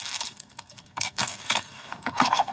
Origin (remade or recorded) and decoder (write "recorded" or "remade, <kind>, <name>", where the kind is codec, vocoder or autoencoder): remade, codec, SNAC